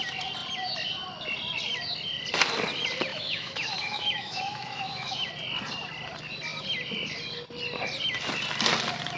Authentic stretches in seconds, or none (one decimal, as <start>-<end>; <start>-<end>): 0.0-3.1; 5.3-9.2